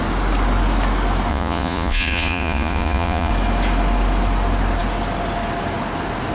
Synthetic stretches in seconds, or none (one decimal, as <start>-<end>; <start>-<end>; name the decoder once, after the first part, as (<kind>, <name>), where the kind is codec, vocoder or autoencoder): 1.3-3.3 (vocoder, Vocos)